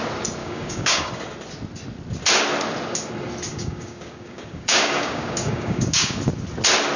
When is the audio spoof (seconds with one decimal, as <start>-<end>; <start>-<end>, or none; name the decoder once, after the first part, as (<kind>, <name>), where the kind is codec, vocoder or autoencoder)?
0.4-1.1 (codec, DAC); 3.5-6.2